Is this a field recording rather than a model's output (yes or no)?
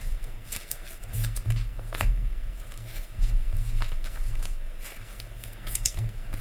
no